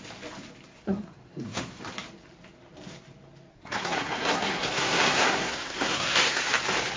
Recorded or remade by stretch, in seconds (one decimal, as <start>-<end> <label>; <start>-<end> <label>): 0.0-0.7 recorded; 0.7-1.8 remade; 1.8-3.5 recorded; 3.5-6.4 remade; 6.4-7.0 recorded

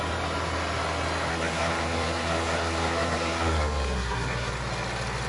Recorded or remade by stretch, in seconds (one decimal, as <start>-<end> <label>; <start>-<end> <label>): 0.0-1.3 recorded; 1.3-4.5 remade; 4.5-5.3 recorded

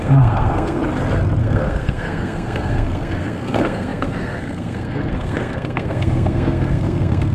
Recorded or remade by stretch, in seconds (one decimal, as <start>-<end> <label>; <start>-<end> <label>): 0.0-0.8 remade; 0.8-1.4 recorded; 1.4-7.3 remade